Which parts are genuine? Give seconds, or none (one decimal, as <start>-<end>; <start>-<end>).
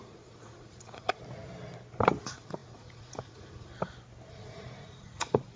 1.2-2.2; 3.7-4.3